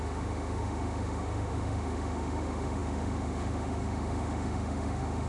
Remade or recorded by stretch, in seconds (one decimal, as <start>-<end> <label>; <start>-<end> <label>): 0.0-5.3 remade